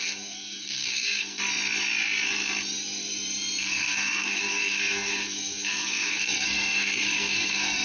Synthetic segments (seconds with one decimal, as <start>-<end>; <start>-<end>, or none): 0.0-1.4; 3.6-7.8